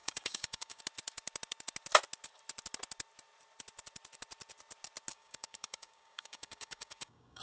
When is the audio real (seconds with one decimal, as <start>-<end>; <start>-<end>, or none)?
0.8-5.1